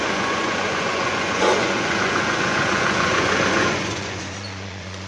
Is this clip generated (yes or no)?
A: yes